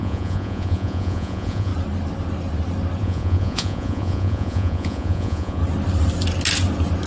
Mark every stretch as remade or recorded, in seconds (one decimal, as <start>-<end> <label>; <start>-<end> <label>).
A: 0.0-1.7 remade; 1.7-3.0 recorded; 3.0-5.6 remade; 5.6-7.1 recorded

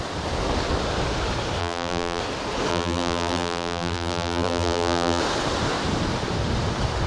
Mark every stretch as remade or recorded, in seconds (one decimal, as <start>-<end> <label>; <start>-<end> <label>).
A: 0.0-1.6 recorded; 1.6-2.2 remade; 2.2-2.7 recorded; 2.7-5.2 remade; 5.2-7.1 recorded